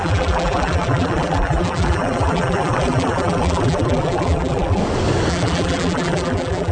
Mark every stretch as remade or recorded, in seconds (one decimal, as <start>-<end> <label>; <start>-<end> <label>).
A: 0.0-4.8 remade; 4.8-5.3 recorded; 5.3-6.7 remade